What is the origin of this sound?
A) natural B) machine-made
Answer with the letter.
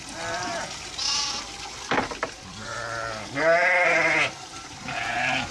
A